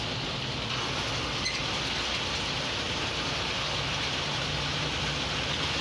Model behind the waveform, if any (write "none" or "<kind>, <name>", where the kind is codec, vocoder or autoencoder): none